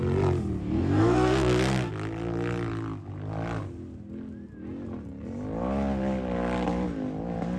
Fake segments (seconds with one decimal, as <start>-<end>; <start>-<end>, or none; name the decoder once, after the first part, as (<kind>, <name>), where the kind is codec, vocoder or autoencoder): 0.6-1.9 (codec, DAC)